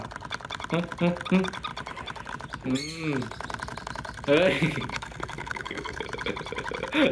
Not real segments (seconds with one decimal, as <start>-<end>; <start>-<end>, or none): 4.9-6.0